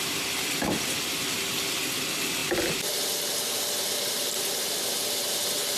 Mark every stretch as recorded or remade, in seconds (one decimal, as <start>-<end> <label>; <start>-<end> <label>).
0.0-5.8 recorded